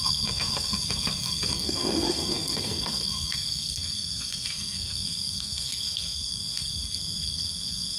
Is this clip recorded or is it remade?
remade